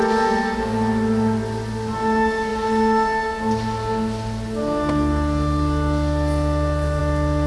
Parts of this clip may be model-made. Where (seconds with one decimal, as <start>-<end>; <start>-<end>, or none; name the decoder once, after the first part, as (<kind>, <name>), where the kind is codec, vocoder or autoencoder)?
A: none